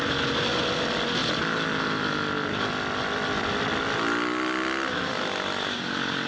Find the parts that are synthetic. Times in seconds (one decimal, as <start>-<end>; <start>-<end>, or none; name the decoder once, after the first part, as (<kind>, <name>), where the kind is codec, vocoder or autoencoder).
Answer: none

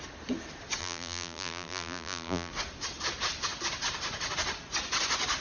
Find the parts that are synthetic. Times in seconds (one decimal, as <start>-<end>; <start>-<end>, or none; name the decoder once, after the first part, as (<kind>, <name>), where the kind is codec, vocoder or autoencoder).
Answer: 0.8-2.5 (vocoder, BigVGAN v2)

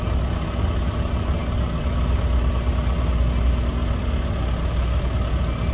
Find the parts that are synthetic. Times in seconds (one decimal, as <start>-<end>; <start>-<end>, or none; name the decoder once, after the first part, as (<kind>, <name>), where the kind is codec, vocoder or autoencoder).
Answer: 3.8-4.4 (vocoder, BigVGAN v2)

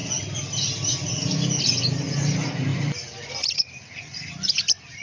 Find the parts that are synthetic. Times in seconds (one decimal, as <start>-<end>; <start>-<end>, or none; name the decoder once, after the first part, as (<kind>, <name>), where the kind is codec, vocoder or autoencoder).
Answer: 2.7-5.0 (vocoder, BigVGAN v2)

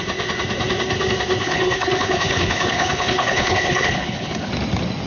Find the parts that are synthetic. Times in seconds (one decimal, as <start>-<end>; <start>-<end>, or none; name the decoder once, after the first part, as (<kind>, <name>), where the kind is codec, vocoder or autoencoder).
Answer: 1.4-4.5 (codec, HILCodec)